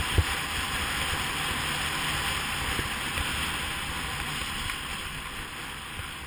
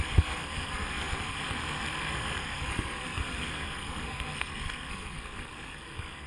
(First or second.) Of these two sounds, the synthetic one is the second